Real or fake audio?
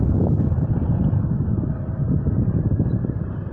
real